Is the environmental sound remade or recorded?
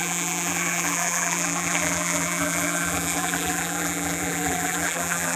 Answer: remade